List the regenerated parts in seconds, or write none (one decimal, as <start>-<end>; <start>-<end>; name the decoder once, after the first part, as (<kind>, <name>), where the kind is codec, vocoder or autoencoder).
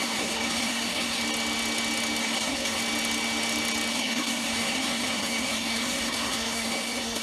0.0-1.2 (codec, SNAC); 2.2-2.8; 3.9-7.2